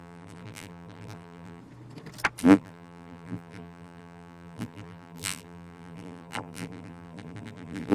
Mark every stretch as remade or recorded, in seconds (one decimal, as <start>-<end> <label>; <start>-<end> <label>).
0.0-1.6 remade; 1.6-2.4 recorded; 2.4-7.9 remade

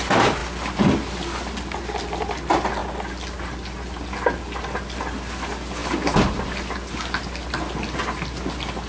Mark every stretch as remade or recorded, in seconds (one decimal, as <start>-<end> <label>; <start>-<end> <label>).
0.0-8.9 recorded

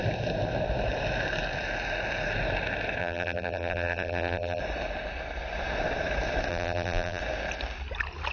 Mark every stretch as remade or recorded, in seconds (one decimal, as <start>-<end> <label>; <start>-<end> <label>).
0.0-3.0 recorded; 3.0-4.6 remade; 4.6-6.5 recorded; 6.5-7.2 remade; 7.2-8.3 recorded

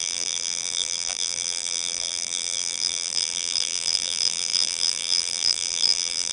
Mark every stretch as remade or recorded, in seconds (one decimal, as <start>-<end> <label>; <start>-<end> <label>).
0.0-6.3 remade

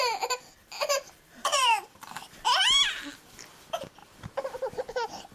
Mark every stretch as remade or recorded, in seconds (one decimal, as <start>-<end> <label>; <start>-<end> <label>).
0.0-5.3 remade

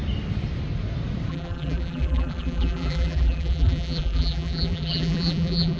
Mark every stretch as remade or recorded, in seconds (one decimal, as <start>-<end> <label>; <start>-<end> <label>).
0.0-1.3 recorded; 1.3-5.8 remade

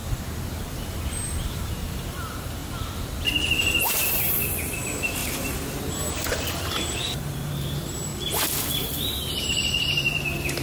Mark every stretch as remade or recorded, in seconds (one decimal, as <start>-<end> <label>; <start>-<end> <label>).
0.0-0.7 recorded; 0.7-2.6 remade; 2.6-3.8 recorded; 3.8-8.1 remade; 8.1-9.4 recorded; 9.4-10.6 remade